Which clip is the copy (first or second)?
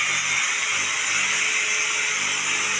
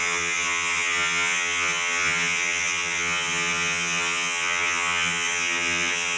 second